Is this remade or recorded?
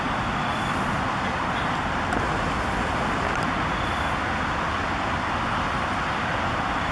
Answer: recorded